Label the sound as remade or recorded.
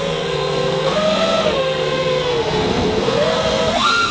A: remade